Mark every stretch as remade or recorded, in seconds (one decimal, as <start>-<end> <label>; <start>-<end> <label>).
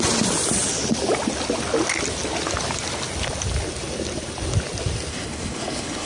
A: 0.0-5.1 recorded; 5.1-6.1 remade